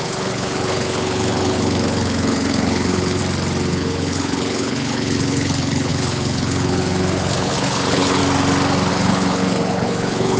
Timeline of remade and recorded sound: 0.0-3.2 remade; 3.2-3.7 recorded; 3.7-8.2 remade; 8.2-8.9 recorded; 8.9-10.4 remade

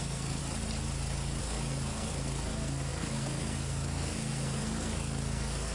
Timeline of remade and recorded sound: 0.0-0.4 remade; 0.4-1.4 recorded; 1.4-5.7 remade

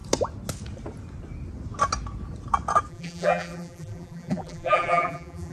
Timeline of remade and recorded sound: 0.0-2.9 recorded; 2.9-5.5 remade

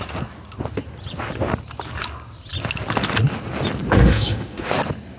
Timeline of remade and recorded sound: 0.0-3.9 recorded; 3.9-4.7 remade; 4.7-5.2 recorded

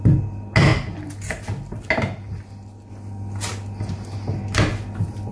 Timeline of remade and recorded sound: 0.0-5.3 recorded